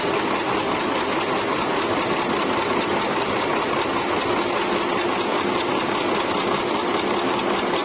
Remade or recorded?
recorded